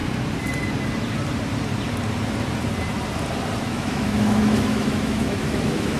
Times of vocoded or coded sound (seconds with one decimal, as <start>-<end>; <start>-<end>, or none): 3.6-6.0